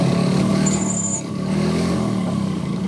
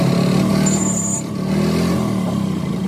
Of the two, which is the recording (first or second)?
second